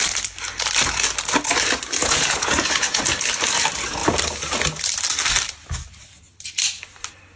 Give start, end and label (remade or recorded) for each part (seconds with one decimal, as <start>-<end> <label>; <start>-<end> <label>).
0.0-2.0 recorded; 2.0-3.0 remade; 3.0-7.4 recorded